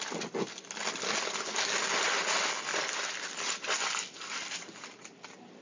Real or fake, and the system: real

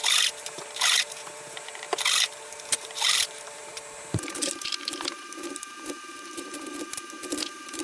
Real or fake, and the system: fake, vocoder, BigVGAN v2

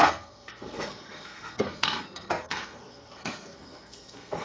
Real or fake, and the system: fake, codec, SNAC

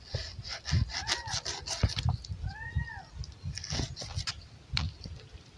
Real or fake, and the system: real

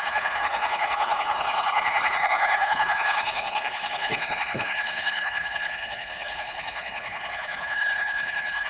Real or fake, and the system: fake, codec, HILCodec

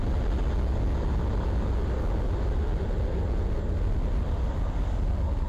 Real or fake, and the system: real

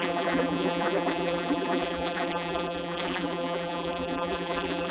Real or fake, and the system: fake, vocoder, BigVGAN v2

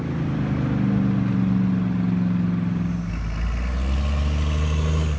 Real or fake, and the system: real